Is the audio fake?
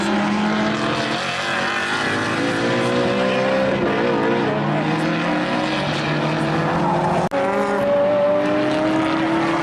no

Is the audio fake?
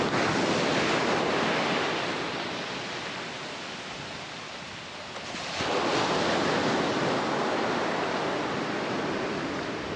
no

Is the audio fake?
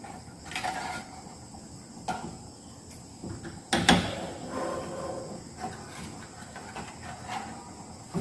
no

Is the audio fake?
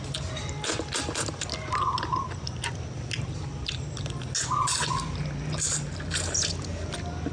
no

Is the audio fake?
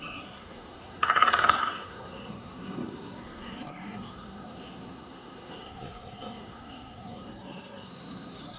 yes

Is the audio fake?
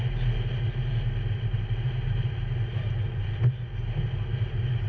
no